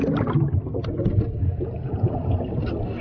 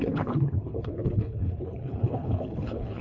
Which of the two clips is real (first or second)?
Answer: first